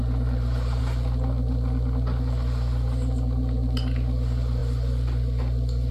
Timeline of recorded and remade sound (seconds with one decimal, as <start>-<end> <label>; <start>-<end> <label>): 0.0-0.8 remade; 0.8-5.9 recorded